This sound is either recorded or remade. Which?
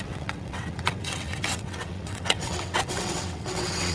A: remade